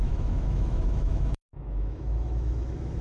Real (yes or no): no